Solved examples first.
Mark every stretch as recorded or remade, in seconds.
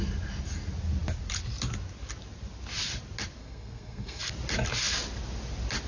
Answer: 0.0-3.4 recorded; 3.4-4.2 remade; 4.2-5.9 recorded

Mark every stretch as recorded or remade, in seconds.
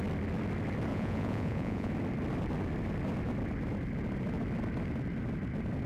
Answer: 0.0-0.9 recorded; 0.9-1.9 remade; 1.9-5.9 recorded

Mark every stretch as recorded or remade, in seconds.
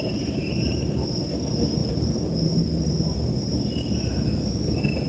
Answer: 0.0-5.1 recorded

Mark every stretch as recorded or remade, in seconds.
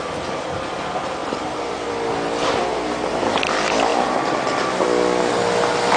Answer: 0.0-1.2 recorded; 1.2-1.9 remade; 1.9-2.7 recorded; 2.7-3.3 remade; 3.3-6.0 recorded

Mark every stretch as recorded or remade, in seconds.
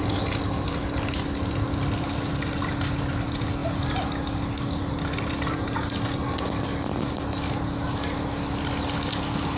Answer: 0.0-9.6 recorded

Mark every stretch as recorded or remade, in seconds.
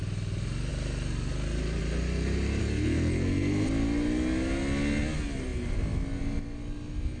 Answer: 0.0-2.6 recorded; 2.6-3.7 remade; 3.7-7.2 recorded